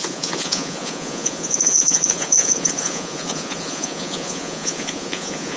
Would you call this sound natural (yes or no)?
no